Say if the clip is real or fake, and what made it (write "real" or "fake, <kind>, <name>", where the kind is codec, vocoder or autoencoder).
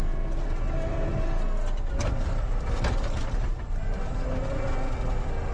real